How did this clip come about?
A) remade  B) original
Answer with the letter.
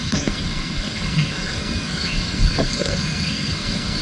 A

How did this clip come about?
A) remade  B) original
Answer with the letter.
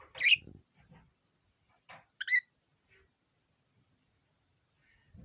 B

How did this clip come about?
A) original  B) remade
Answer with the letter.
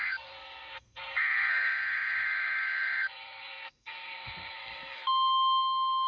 B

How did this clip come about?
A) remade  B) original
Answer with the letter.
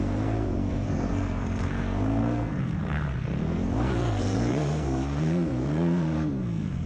A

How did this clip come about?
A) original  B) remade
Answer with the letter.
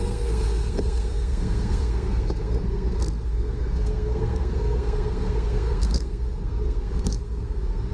B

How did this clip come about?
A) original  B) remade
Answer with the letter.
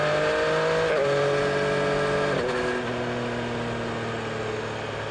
A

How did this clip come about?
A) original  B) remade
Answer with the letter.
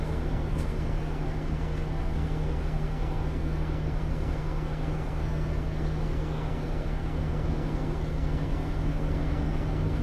B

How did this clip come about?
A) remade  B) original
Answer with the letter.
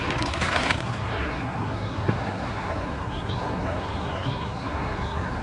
A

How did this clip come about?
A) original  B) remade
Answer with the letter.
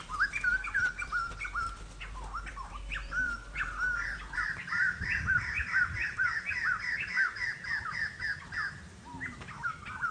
A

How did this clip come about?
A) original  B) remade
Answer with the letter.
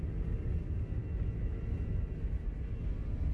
A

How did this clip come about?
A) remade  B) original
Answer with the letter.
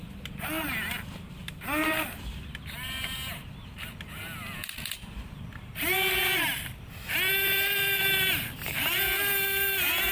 B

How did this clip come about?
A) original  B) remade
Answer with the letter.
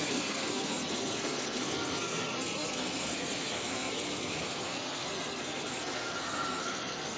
B